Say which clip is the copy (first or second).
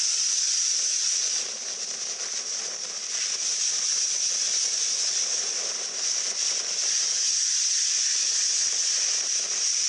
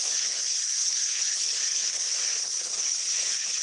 second